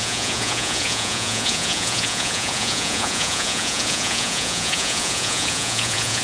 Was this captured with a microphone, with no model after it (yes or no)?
no